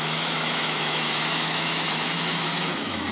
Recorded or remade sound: remade